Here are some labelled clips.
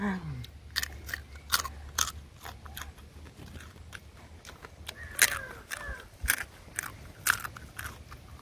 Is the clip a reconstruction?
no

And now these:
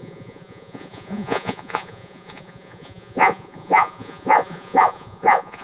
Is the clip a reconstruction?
yes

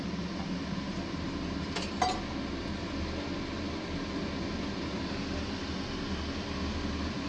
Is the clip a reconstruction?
no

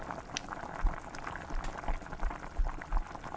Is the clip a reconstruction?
no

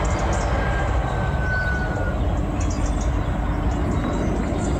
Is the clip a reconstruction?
no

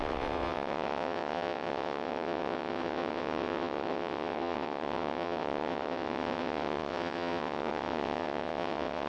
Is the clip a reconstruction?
yes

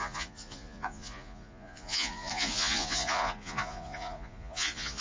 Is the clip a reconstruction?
yes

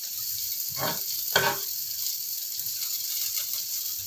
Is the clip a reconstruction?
yes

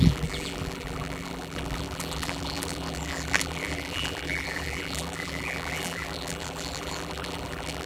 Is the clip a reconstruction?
yes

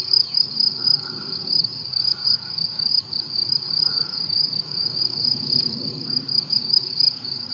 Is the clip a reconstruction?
yes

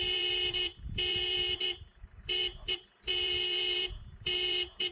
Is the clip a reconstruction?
yes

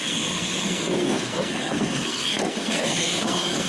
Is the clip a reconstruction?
yes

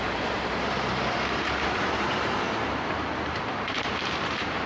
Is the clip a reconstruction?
yes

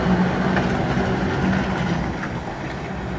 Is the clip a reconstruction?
no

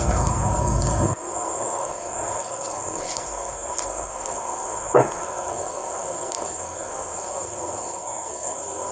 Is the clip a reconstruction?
yes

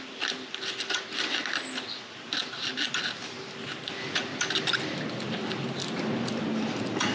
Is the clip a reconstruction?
no